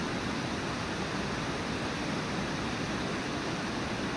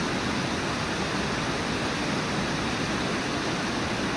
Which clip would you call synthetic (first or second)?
first